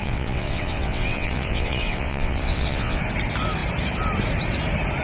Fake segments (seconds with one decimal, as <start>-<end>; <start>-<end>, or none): 0.0-3.0